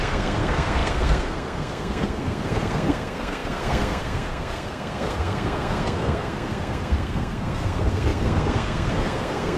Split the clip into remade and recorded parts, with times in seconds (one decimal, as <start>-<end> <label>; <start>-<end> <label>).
0.0-9.6 remade